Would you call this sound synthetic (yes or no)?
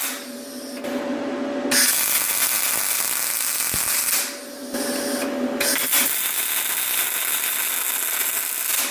no